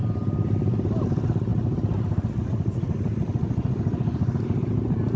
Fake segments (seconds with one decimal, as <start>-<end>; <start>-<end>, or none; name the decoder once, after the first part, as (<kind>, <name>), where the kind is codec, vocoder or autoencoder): none